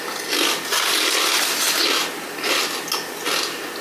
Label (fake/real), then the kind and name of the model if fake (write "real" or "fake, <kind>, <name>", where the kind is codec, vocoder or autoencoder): real